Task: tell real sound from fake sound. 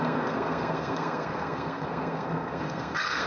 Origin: fake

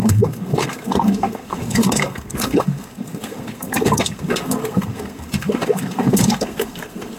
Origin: fake